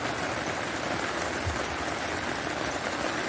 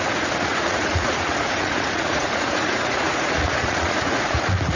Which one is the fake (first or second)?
second